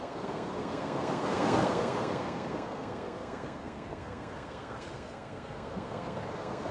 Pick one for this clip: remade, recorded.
remade